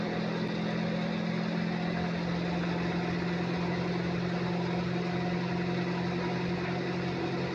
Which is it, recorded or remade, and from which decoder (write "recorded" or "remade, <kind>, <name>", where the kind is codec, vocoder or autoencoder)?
recorded